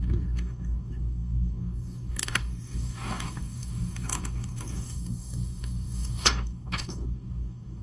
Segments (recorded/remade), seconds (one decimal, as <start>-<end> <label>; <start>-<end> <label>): 0.0-7.8 remade

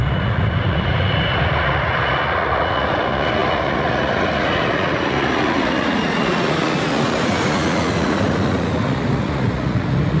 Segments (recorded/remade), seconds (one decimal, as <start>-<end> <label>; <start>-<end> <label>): 0.0-10.2 remade

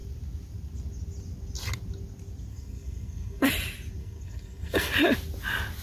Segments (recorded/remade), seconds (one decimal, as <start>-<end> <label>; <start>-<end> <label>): 0.0-2.5 recorded; 2.5-3.5 remade; 3.5-4.0 recorded; 4.0-4.9 remade; 4.9-5.8 recorded